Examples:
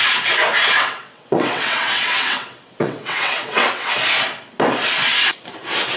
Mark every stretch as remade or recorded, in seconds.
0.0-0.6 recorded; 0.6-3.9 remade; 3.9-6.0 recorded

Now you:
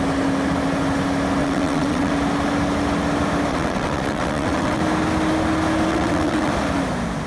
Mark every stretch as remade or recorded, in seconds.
0.0-1.4 recorded; 1.4-2.1 remade; 2.1-3.5 recorded; 3.5-4.8 remade; 4.8-5.9 recorded; 5.9-6.5 remade; 6.5-7.3 recorded

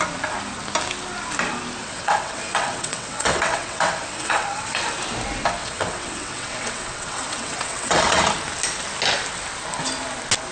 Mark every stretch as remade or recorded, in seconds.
0.0-1.8 recorded; 1.8-4.8 remade; 4.8-5.6 recorded; 5.6-8.2 remade; 8.2-10.5 recorded